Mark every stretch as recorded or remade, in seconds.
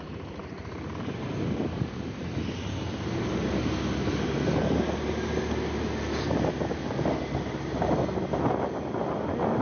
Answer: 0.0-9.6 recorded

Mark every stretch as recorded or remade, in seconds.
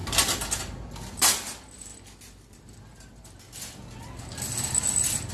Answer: 0.0-5.3 recorded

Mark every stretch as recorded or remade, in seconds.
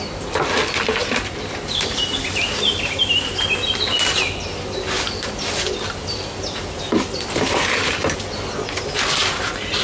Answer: 0.0-1.0 recorded; 1.0-2.0 remade; 2.0-9.8 recorded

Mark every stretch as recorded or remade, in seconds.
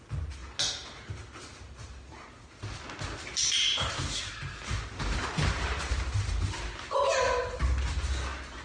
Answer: 0.0-3.3 recorded; 3.3-5.8 remade; 5.8-8.6 recorded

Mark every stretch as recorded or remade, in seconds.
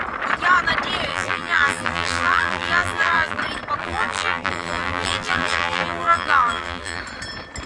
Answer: 0.0-1.1 recorded; 1.1-3.4 remade; 3.4-3.8 recorded; 3.8-7.0 remade; 7.0-7.7 recorded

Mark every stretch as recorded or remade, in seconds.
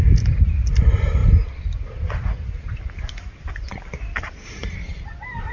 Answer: 0.0-4.6 recorded; 4.6-5.1 remade; 5.1-5.5 recorded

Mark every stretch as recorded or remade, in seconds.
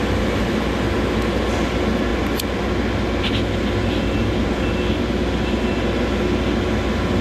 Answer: 0.0-7.2 recorded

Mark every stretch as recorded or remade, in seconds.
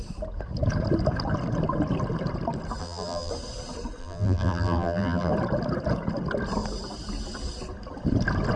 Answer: 0.0-2.8 recorded; 2.8-3.3 remade; 3.3-4.0 recorded; 4.0-5.3 remade; 5.3-8.6 recorded